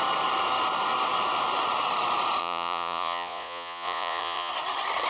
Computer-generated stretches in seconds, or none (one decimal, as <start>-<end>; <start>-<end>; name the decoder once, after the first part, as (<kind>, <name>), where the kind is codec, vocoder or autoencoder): 2.4-4.5 (vocoder, Vocos)